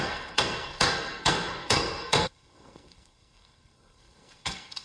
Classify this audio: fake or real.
fake